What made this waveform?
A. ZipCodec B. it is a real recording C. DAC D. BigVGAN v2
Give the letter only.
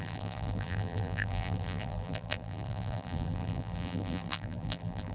D